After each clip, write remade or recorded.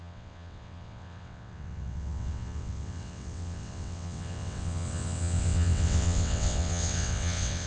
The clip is remade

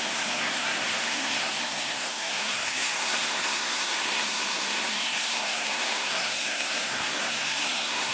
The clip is remade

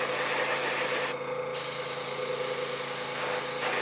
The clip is recorded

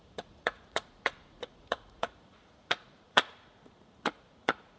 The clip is remade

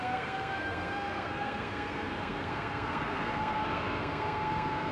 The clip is remade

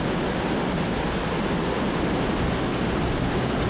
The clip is recorded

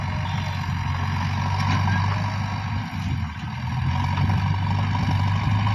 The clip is recorded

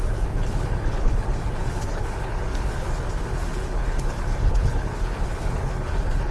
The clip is remade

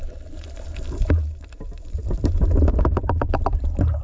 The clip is remade